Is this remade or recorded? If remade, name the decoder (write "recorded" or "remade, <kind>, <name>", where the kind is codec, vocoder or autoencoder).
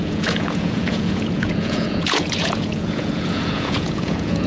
remade, vocoder, Vocos